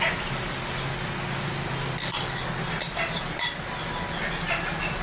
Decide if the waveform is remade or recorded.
recorded